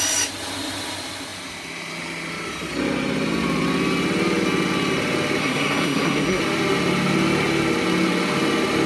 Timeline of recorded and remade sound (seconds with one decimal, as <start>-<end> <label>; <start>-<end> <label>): 0.0-5.4 recorded; 5.4-6.4 remade; 6.4-8.9 recorded